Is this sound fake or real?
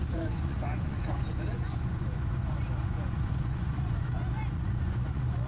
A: fake